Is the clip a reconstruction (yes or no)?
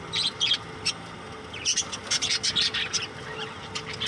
no